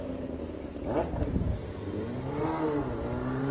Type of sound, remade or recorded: remade